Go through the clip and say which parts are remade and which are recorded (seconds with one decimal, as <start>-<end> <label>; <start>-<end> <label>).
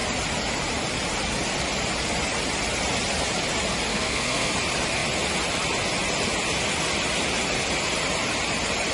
0.0-3.9 recorded; 3.9-4.5 remade; 4.5-8.9 recorded